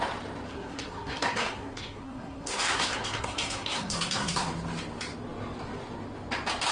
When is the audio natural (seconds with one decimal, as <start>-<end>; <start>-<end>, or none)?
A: 0.0-0.5; 4.5-6.7